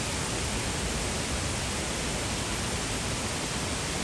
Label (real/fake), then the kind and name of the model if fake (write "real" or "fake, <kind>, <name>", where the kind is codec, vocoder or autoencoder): real